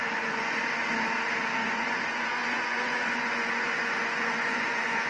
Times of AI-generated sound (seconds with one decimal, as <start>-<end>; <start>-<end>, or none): 0.0-0.6; 1.6-5.1